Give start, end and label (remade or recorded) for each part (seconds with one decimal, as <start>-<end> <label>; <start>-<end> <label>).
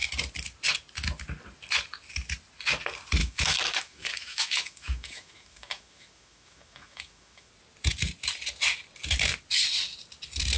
0.0-3.2 recorded; 3.2-7.5 remade; 7.5-10.6 recorded